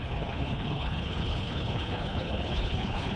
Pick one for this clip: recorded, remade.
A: remade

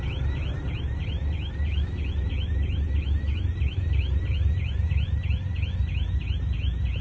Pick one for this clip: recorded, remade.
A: recorded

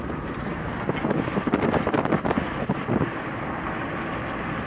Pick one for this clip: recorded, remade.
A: recorded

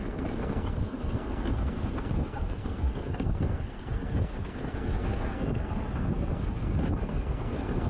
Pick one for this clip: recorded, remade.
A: remade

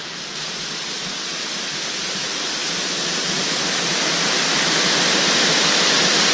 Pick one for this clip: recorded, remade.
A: recorded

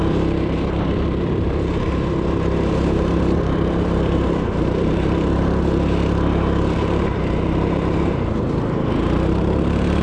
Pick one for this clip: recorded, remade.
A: remade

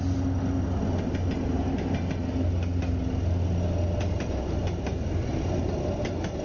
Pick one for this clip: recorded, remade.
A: recorded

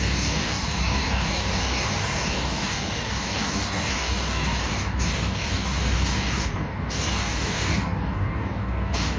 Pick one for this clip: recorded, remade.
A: remade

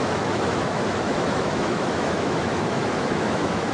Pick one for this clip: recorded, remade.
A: remade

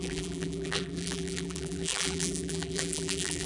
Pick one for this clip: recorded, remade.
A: remade